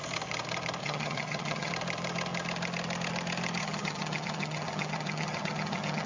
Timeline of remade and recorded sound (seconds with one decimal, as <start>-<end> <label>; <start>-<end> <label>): 0.0-0.8 recorded; 0.8-1.7 remade; 1.7-3.6 recorded; 3.6-6.1 remade